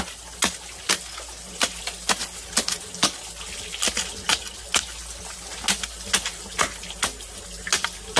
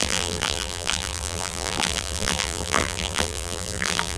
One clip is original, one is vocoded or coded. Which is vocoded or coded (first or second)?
second